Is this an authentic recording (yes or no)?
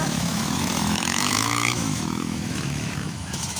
no